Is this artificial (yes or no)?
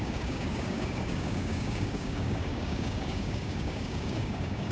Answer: yes